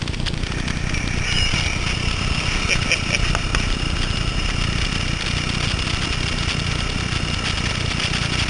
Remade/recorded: recorded